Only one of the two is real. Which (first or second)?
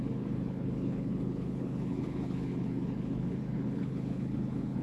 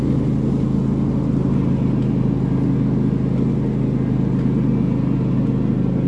second